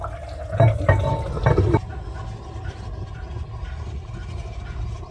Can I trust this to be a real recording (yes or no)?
yes